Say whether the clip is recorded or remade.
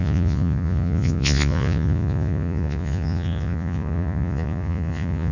remade